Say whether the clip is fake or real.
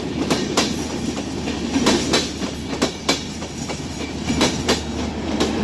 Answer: fake